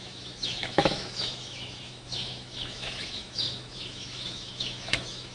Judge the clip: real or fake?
fake